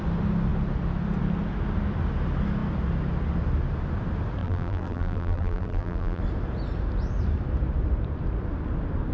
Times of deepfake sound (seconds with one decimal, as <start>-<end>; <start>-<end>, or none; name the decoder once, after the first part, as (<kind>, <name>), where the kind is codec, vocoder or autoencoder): 4.4-6.2 (vocoder, BigVGAN v2)